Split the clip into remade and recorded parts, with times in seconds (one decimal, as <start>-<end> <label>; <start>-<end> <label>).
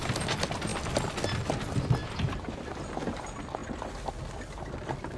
0.0-2.0 recorded; 2.0-2.9 remade; 2.9-5.2 recorded